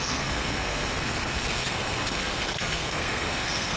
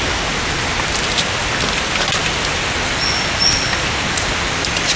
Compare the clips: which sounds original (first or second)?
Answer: second